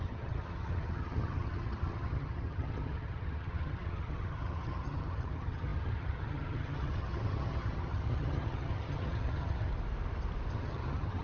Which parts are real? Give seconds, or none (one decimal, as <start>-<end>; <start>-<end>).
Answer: 9.7-10.5